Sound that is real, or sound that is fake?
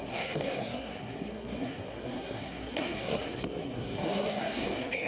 fake